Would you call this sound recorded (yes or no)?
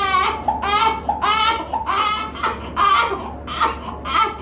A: yes